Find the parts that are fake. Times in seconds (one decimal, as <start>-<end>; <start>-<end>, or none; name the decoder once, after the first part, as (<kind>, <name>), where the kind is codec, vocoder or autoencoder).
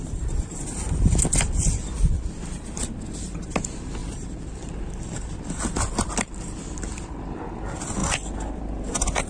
4.0-7.1 (vocoder, BigVGAN v2)